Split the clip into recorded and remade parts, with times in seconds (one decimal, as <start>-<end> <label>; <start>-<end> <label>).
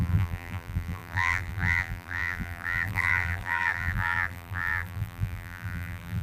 0.0-6.2 remade